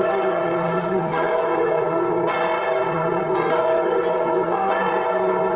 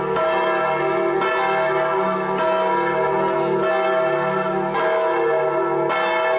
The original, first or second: second